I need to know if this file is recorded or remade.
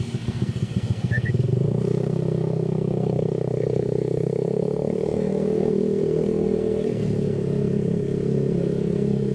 remade